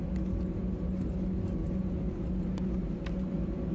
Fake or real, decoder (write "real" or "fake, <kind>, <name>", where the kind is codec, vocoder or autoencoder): real